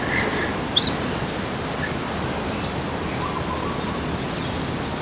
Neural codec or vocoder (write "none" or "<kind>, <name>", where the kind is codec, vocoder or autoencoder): none